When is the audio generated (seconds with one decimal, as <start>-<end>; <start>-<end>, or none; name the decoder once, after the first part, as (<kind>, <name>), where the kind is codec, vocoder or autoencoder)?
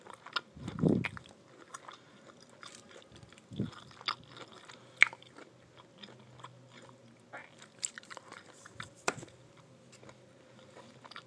none